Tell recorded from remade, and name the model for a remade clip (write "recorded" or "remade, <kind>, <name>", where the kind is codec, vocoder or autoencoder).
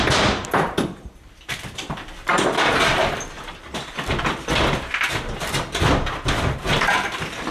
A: remade, vocoder, BigVGAN v2